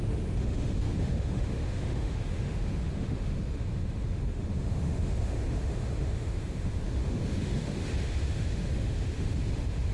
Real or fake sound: fake